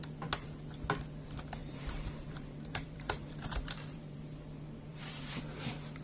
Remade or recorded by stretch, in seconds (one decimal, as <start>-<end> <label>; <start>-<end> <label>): 0.0-1.6 recorded; 1.6-4.2 remade; 4.2-4.9 recorded; 4.9-5.4 remade; 5.4-6.0 recorded